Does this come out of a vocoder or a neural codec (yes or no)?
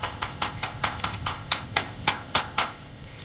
yes